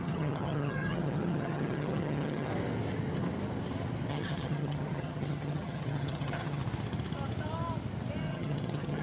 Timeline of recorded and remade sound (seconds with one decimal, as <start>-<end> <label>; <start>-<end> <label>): 0.0-2.5 remade; 2.5-4.1 recorded; 4.1-6.6 remade; 6.6-8.2 recorded; 8.2-9.0 remade